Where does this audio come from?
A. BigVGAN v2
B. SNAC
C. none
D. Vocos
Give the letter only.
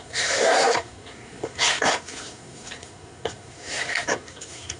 B